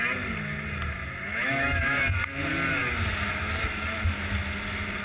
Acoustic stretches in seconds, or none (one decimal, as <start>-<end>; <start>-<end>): 0.0-1.3; 2.0-5.0